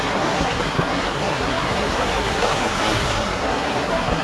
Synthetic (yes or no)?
yes